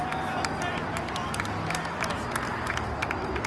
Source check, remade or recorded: recorded